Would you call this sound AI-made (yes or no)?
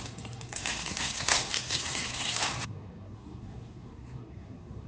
yes